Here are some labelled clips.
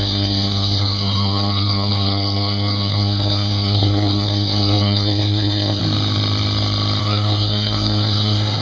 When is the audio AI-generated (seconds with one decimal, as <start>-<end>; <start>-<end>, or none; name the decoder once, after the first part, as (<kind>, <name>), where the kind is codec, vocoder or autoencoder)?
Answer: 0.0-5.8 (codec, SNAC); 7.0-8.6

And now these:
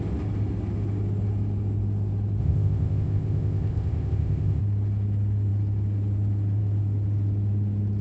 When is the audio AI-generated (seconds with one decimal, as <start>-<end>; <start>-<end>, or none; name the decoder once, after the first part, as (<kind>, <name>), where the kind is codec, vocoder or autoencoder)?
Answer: 2.4-4.6 (codec, ZipCodec)

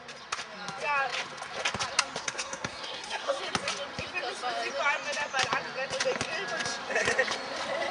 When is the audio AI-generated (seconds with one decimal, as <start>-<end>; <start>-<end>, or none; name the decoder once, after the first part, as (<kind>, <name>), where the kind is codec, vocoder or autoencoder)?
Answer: 2.2-3.4 (codec, SNAC)